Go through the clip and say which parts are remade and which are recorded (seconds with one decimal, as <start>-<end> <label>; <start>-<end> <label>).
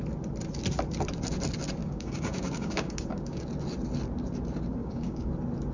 0.0-1.8 recorded; 1.8-3.5 remade; 3.5-4.8 recorded; 4.8-5.3 remade; 5.3-5.7 recorded